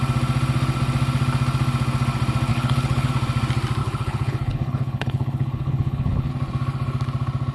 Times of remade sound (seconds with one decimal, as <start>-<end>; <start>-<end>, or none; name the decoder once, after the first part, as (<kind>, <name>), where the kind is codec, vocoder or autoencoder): 2.5-3.1 (codec, HILCodec); 3.8-6.3